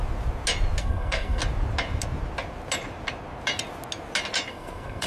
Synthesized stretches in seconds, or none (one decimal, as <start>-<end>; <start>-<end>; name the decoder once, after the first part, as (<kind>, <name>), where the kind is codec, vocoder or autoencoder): 0.8-1.4 (codec, SNAC); 4.5-5.1